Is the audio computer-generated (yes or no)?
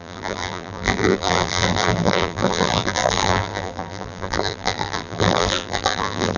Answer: yes